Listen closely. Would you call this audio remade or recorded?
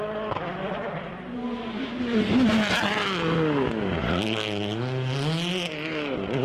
recorded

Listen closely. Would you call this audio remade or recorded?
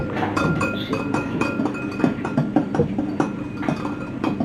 remade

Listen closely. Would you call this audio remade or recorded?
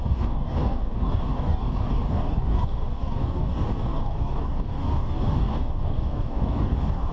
remade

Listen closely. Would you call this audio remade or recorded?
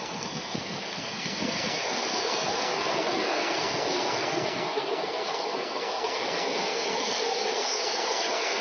remade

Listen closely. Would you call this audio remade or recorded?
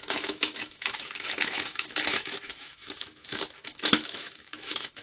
remade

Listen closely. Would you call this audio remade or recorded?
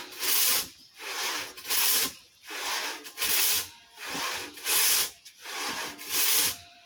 recorded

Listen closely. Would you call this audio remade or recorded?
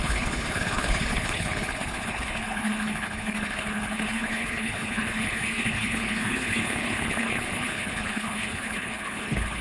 remade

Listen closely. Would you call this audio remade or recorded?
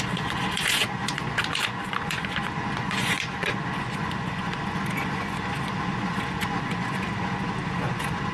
remade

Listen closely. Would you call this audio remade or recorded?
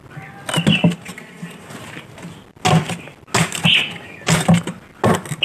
recorded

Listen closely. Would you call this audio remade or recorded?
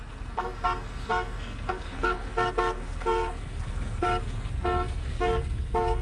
remade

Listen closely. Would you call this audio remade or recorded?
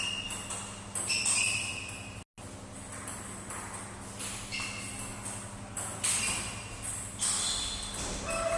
recorded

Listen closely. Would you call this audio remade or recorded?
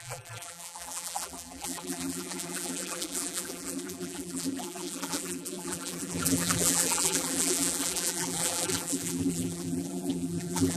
remade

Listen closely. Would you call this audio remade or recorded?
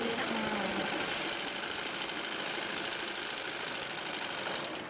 recorded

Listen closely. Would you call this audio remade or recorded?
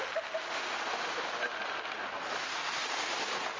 recorded